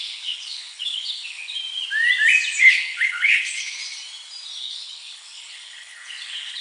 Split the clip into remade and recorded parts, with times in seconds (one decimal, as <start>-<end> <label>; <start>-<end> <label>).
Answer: 0.0-1.6 remade; 1.6-2.6 recorded; 2.6-3.8 remade; 3.8-4.6 recorded; 4.6-6.6 remade